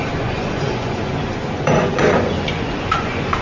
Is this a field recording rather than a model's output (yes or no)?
no